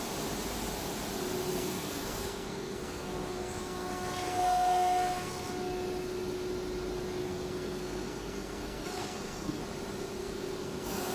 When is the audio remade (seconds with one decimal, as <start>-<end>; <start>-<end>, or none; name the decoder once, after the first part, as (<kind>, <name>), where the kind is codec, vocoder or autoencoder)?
1.5-5.5 (codec, SNAC); 7.2-9.6; 10.2-11.1